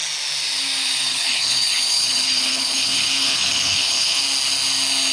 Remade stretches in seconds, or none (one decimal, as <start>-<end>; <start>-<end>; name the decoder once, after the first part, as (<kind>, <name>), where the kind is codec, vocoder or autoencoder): 1.1-4.2 (codec, HILCodec)